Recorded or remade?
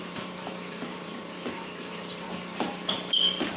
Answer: remade